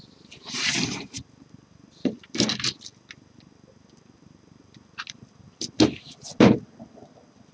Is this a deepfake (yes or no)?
no